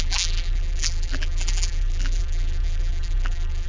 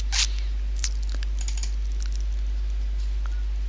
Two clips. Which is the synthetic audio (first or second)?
first